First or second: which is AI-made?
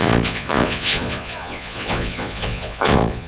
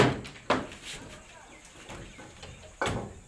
first